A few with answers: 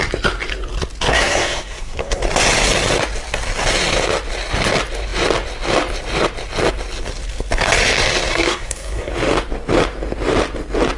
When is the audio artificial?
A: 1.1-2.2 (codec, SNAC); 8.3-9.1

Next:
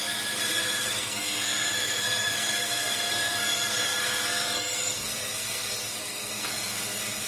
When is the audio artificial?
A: 0.0-7.3 (codec, SNAC)

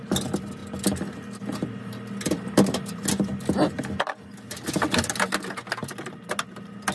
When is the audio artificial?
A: none

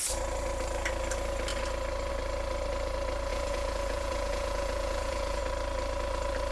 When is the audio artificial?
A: 3.3-5.4 (vocoder, Vocos)

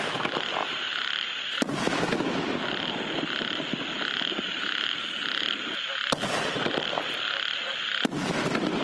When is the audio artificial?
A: none